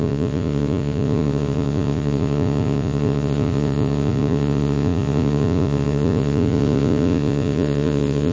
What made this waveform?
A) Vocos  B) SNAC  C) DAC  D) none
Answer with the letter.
A